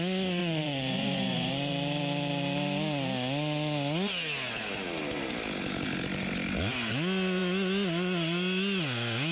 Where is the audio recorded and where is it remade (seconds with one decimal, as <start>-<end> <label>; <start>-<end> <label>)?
0.0-0.4 recorded; 0.4-1.7 remade; 1.7-9.3 recorded